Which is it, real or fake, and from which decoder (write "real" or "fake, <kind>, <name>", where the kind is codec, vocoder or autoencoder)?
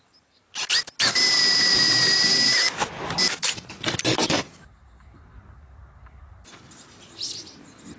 real